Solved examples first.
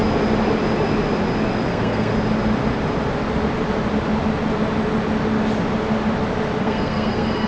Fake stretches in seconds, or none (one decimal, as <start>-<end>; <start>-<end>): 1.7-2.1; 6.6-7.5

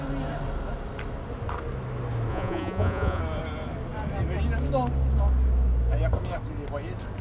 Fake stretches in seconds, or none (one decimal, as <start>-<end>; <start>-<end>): 2.3-3.2

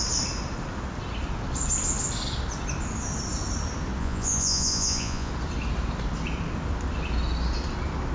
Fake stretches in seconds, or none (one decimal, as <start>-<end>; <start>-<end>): 4.0-5.3

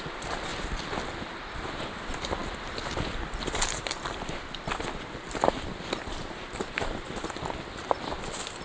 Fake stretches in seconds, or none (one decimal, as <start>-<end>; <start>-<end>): 0.0-0.5; 1.8-8.6

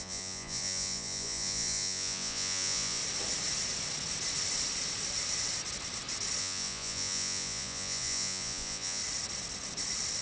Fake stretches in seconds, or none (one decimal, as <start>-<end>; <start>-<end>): 0.0-3.0; 6.4-9.0

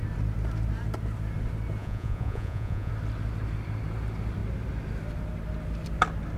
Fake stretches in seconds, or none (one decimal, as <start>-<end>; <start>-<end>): 1.8-2.9

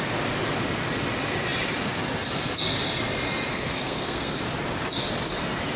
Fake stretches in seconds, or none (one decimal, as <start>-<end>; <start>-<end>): 3.5-4.4